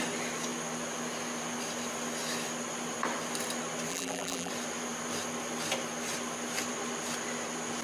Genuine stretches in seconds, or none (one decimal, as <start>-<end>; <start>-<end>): 0.0-3.9; 4.5-7.8